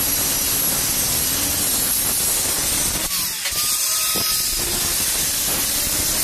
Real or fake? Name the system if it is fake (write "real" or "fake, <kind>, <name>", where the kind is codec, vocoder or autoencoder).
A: real